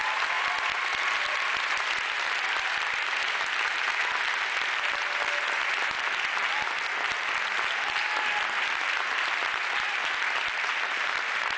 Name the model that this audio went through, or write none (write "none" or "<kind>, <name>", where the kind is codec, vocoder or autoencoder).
none